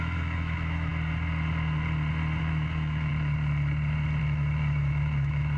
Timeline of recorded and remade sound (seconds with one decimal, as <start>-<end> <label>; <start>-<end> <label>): 0.0-0.9 remade; 0.9-2.4 recorded; 2.4-3.1 remade; 3.1-4.2 recorded; 4.2-5.6 remade

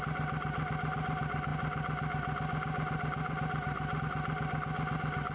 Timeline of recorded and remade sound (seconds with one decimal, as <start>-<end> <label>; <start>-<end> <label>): 0.0-5.3 recorded

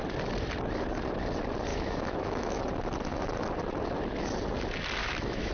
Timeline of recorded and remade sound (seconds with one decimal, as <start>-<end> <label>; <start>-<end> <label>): 0.0-1.7 recorded; 1.7-2.6 remade; 2.6-5.0 recorded; 5.0-5.5 remade

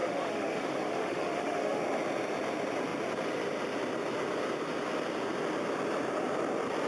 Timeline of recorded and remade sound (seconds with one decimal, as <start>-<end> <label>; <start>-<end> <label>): 0.0-1.8 remade; 1.8-6.9 recorded

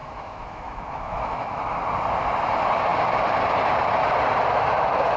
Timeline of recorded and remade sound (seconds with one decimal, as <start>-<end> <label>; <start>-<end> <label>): 0.0-1.6 remade; 1.6-5.2 recorded